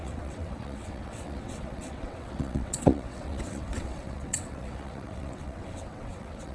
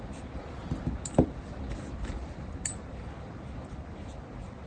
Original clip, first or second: second